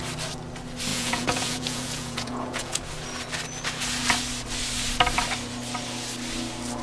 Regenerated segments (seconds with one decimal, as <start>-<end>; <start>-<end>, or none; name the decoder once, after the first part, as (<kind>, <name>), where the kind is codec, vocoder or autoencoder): 0.9-2.8 (vocoder, Vocos)